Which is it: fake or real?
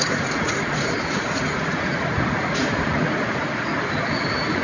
fake